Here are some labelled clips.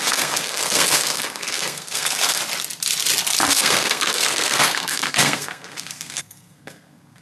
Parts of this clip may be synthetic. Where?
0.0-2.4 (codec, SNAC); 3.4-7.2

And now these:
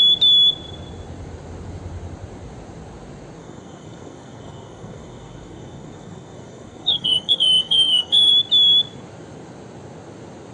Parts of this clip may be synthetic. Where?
3.4-8.3 (codec, SNAC)

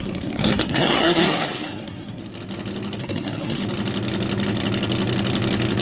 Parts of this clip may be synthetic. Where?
0.0-2.2 (codec, SNAC); 3.0-3.6

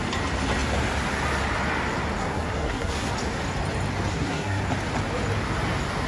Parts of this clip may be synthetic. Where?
2.2-3.1 (codec, SNAC); 4.1-4.6

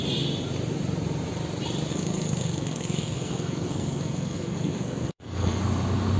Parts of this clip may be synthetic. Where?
1.9-5.6 (codec, SNAC)

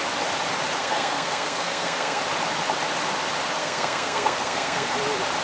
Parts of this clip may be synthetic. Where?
0.8-2.2 (codec, SNAC); 3.6-4.9

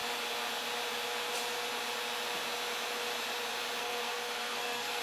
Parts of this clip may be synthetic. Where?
3.8-5.0 (codec, SNAC)